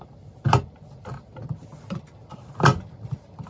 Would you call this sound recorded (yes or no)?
yes